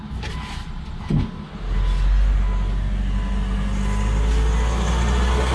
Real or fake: real